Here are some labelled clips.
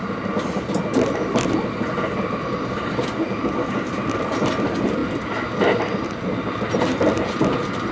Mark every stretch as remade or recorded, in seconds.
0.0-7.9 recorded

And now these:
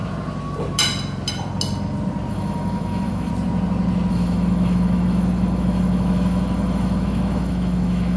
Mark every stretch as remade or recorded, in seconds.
0.0-2.3 recorded; 2.3-3.3 remade; 3.3-4.1 recorded; 4.1-8.2 remade

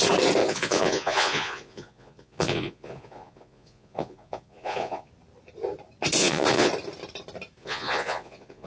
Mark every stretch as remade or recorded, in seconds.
0.0-0.4 recorded; 0.4-5.1 remade; 5.1-6.2 recorded; 6.2-6.7 remade; 6.7-7.6 recorded; 7.6-8.7 remade

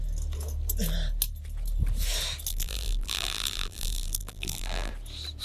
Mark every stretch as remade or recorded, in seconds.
0.0-2.5 recorded; 2.5-4.9 remade; 4.9-5.4 recorded

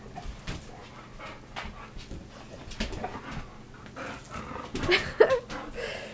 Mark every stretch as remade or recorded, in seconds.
0.0-6.1 recorded

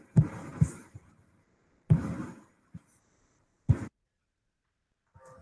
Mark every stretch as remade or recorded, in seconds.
0.0-5.4 remade

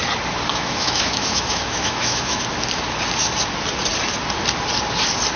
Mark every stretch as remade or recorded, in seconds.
0.0-0.5 recorded; 0.5-2.4 remade; 2.4-5.4 recorded